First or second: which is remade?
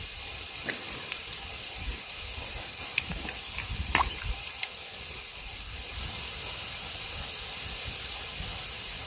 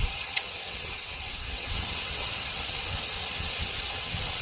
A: second